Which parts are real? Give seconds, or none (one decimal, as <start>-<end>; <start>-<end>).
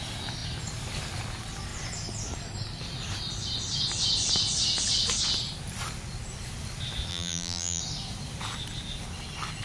0.0-7.1; 7.8-9.6